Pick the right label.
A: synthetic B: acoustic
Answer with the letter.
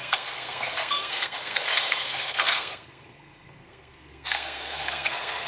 A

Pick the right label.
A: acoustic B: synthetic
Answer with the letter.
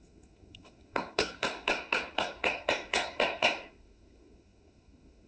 B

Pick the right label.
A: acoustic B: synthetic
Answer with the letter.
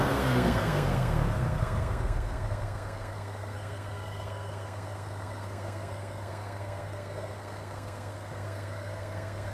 B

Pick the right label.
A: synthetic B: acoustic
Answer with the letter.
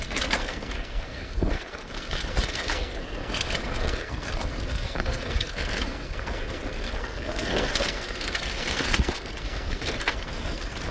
A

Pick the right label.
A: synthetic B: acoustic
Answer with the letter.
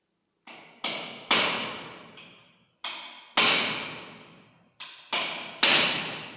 B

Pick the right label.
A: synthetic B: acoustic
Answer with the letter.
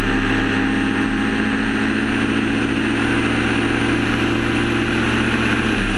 B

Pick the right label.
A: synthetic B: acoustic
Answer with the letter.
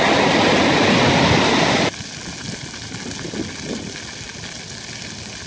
B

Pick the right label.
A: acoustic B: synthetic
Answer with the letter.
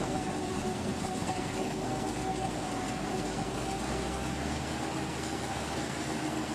B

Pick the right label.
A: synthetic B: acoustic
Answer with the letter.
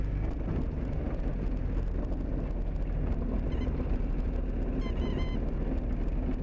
B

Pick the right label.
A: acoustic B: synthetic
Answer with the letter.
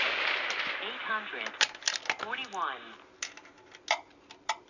A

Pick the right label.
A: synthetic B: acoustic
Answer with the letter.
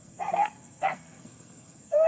A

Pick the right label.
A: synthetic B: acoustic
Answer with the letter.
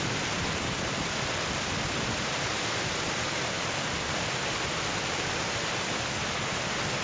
B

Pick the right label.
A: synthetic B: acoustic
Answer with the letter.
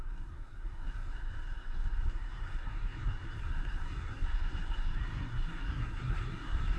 A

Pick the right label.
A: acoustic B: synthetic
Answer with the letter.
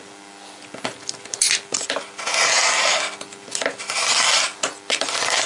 A